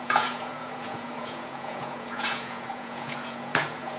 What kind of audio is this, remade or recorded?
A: remade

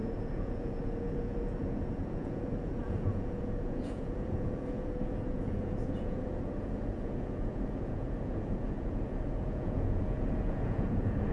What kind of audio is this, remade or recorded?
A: remade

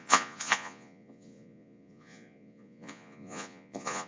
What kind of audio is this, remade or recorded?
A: remade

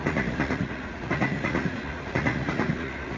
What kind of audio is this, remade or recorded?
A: remade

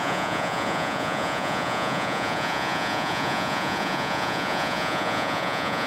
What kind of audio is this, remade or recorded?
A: remade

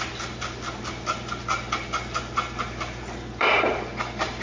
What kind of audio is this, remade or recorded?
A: recorded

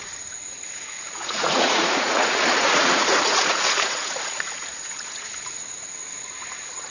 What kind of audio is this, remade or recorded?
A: remade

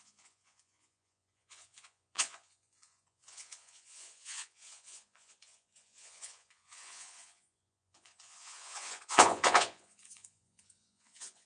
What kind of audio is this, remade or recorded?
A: remade